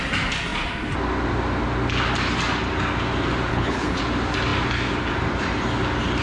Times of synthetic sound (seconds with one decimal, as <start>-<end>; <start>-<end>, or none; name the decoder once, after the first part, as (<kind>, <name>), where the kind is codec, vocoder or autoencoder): 3.5-4.0 (codec, HILCodec)